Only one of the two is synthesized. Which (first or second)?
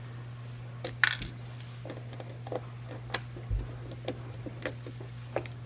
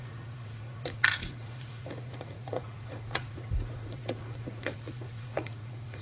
second